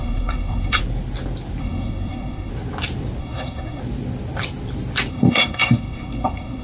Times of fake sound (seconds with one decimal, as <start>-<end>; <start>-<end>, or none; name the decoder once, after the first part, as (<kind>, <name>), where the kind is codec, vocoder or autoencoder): 0.0-0.8 (codec, SNAC); 1.6-2.5; 3.2-3.8; 5.1-6.6